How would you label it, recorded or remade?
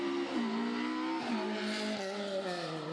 recorded